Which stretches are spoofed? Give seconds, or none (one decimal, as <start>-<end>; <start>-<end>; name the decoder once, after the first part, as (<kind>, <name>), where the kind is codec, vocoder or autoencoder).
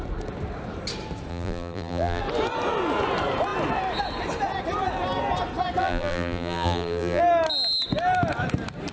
1.3-2.2 (vocoder, BigVGAN v2); 5.8-7.2